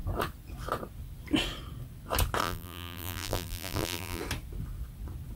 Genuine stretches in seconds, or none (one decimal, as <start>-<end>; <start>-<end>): 0.0-2.4; 4.2-5.4